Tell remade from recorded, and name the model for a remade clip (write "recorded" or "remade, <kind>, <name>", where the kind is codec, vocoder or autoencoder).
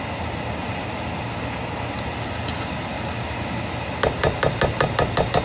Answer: recorded